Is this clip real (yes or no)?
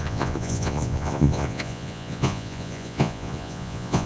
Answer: no